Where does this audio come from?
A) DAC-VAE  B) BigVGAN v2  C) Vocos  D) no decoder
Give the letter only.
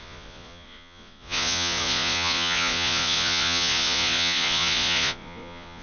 C